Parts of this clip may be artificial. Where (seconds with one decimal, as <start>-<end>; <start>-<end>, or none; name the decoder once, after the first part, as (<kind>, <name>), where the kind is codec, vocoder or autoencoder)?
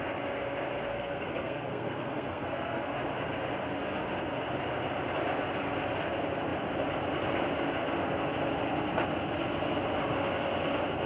0.9-2.9 (codec, SNAC)